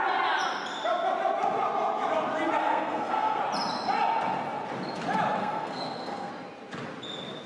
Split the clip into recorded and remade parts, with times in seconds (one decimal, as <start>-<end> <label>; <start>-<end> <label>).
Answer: 0.0-2.6 recorded; 2.6-3.4 remade; 3.4-5.4 recorded; 5.4-6.3 remade; 6.3-7.5 recorded